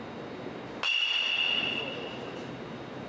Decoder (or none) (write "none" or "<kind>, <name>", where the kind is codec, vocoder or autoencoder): none